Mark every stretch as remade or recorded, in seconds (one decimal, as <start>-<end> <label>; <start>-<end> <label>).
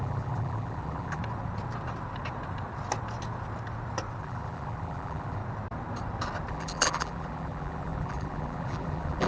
0.0-1.2 remade; 1.2-4.2 recorded; 4.2-5.4 remade; 5.4-6.5 recorded; 6.5-9.3 remade